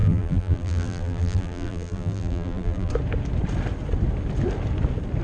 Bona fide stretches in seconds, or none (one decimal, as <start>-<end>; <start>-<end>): 2.9-5.2